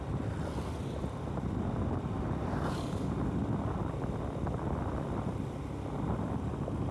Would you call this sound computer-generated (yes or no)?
no